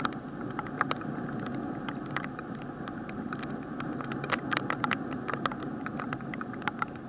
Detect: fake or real real